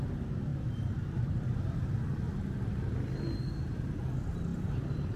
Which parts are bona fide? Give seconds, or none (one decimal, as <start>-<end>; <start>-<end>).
0.0-5.2